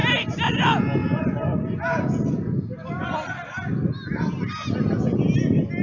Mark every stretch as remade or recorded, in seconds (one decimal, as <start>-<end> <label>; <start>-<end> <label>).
0.0-5.8 recorded